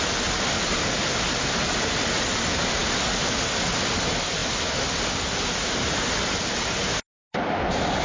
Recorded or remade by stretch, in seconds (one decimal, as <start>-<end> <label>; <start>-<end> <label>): 0.0-8.0 recorded